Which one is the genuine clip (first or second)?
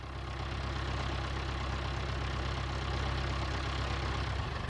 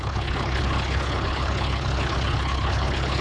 first